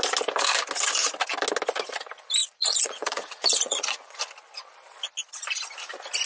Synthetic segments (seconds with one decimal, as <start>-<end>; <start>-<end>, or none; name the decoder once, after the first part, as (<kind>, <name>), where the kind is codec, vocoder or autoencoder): 2.4-4.2 (vocoder, Vocos)